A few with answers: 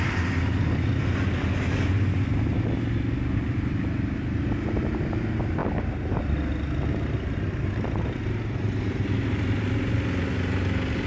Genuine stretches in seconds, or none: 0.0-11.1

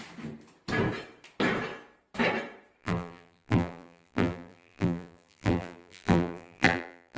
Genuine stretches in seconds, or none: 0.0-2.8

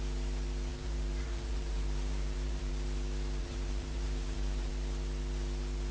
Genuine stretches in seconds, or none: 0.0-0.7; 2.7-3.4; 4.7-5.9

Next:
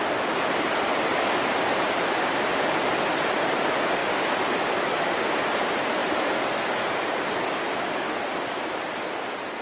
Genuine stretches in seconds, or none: 6.0-7.0